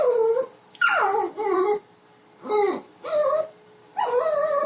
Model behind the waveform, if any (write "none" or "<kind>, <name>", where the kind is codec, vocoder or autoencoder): vocoder, BigVGAN v2